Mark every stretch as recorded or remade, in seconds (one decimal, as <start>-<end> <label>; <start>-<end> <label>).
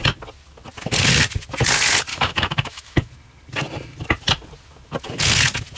0.0-2.1 recorded; 2.1-3.1 remade; 3.1-5.8 recorded